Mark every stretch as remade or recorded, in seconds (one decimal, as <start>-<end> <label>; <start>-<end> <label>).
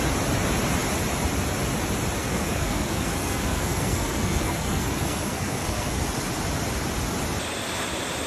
0.0-2.2 recorded; 2.2-6.0 remade; 6.0-8.3 recorded